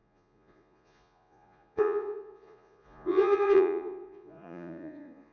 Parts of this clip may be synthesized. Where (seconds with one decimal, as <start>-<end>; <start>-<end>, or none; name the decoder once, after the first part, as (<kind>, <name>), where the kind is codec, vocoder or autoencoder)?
0.0-5.3 (vocoder, Vocos)